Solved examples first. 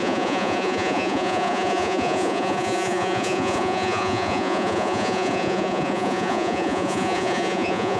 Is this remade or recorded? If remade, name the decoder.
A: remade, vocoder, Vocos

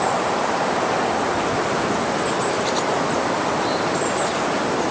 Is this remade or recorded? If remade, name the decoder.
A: recorded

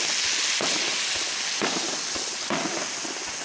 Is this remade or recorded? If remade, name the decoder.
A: recorded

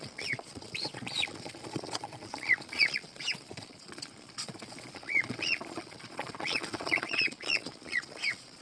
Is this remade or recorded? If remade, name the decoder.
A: remade, vocoder, Vocos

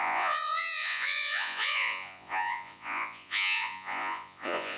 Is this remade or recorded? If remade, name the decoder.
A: remade, vocoder, Vocos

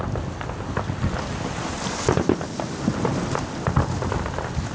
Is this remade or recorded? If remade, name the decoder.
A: recorded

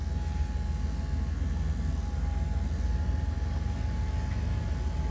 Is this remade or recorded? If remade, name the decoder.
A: recorded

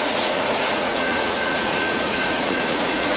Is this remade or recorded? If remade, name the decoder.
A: remade, vocoder, Vocos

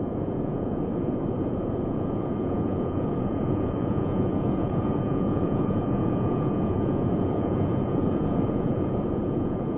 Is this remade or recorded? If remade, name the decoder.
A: remade, vocoder, Vocos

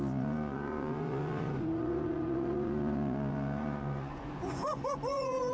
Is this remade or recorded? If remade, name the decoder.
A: remade, vocoder, Vocos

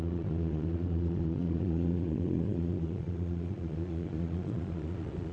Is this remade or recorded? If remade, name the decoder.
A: remade, vocoder, Vocos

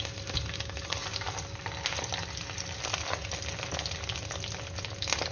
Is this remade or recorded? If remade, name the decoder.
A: recorded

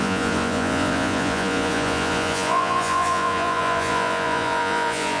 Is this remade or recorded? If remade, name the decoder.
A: remade, vocoder, Vocos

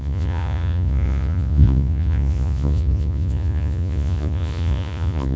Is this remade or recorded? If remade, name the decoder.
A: remade, vocoder, Vocos